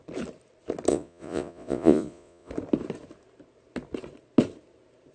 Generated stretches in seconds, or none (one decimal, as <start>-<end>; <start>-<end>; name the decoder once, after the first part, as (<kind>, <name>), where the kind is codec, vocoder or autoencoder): 0.9-2.5 (vocoder, Vocos)